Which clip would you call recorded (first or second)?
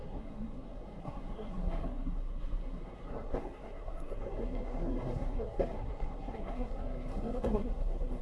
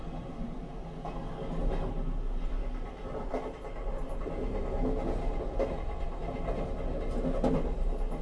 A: second